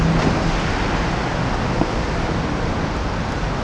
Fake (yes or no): no